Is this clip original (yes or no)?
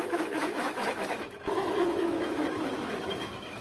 no